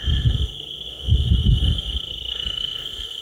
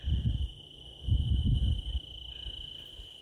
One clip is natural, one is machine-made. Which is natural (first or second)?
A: second